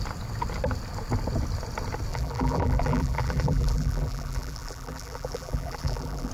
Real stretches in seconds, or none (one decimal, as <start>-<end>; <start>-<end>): 0.0-2.1